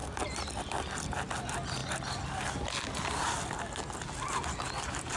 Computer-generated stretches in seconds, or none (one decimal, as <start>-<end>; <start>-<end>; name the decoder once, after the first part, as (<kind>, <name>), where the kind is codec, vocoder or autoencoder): none